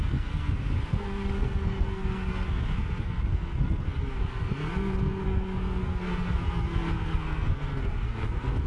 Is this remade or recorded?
remade